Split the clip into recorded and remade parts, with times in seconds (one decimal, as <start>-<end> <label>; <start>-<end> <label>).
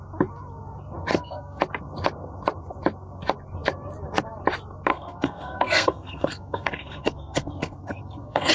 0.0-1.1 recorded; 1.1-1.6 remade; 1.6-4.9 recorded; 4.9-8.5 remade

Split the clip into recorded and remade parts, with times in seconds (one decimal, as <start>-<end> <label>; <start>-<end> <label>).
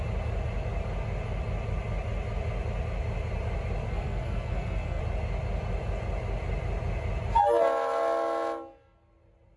0.0-3.9 recorded; 3.9-5.0 remade; 5.0-9.6 recorded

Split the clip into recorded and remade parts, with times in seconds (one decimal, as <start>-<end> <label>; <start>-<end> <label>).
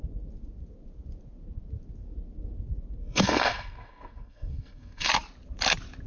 0.0-3.0 recorded; 3.0-5.1 remade; 5.1-6.1 recorded